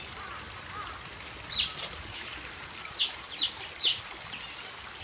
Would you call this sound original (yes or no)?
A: yes